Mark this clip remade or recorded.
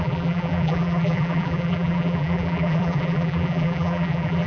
remade